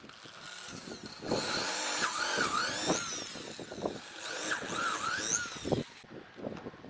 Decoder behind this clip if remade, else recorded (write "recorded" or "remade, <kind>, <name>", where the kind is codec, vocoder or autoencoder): recorded